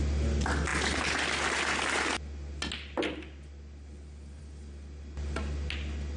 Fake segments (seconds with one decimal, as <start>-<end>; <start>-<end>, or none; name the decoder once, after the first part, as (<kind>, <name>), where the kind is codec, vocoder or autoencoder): none